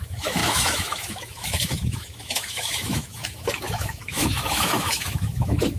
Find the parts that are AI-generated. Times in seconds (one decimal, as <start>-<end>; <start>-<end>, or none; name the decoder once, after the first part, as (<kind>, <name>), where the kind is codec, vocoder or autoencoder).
0.0-5.8 (autoencoder, DAC-VAE)